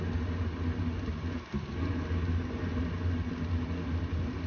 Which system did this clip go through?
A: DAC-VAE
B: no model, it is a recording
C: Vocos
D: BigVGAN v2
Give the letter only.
B